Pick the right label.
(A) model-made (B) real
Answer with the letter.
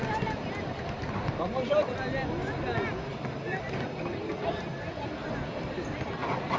B